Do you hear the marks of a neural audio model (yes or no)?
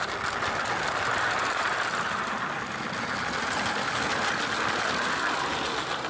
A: no